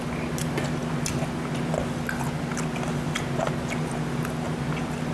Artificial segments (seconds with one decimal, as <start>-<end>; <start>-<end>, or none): none